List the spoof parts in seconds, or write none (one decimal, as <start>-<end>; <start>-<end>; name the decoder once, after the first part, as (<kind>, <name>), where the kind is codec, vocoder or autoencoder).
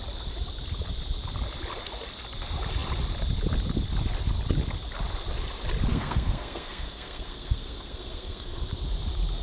5.9-8.6 (codec, SNAC)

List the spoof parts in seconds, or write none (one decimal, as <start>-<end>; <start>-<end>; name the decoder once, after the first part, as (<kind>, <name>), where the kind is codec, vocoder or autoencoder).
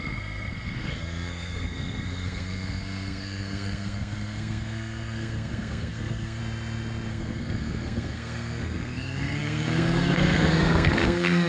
0.0-6.4 (codec, SNAC); 7.1-11.5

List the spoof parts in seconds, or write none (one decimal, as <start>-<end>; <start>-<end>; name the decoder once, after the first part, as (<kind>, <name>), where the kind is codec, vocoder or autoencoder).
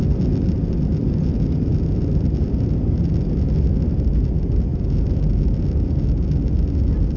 none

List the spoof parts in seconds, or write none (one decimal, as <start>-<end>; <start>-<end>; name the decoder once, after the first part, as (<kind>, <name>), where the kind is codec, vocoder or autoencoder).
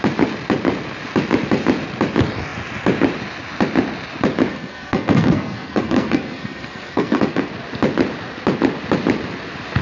4.5-7.5 (codec, SNAC)